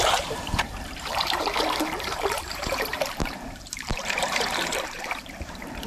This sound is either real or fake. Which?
fake